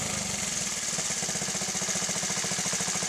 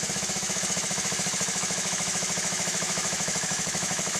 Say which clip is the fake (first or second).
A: second